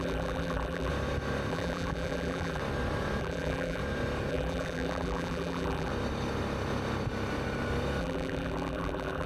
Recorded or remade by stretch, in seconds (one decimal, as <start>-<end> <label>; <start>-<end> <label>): 0.0-0.9 remade; 0.9-1.5 recorded; 1.5-2.6 remade; 2.6-3.2 recorded; 3.2-3.8 remade; 3.8-4.3 recorded; 4.3-5.9 remade; 5.9-8.0 recorded; 8.0-9.3 remade